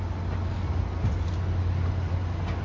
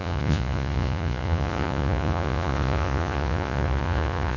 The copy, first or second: second